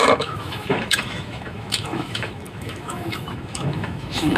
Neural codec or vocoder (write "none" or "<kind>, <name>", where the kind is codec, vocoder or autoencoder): autoencoder, DAC-VAE